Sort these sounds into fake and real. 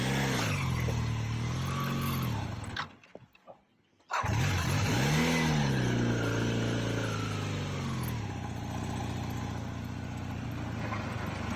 real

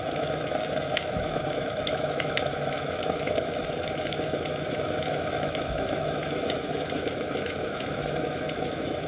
fake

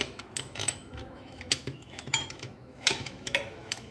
fake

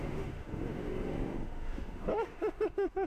fake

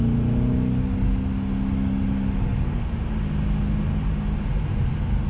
real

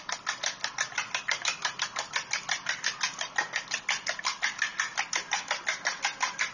real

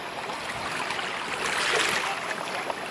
real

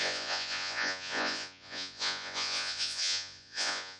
fake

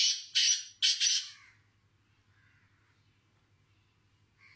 real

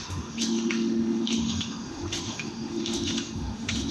fake